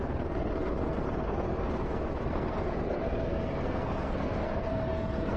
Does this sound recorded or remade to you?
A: remade